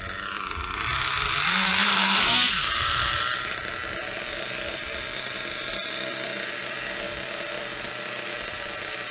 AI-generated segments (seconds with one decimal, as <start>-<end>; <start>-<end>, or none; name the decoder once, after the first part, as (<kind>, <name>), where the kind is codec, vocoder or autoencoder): 1.7-2.6 (codec, SNAC)